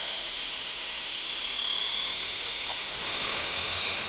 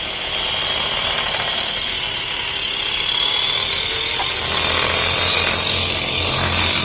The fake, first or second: first